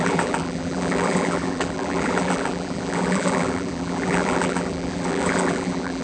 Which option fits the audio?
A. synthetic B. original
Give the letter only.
A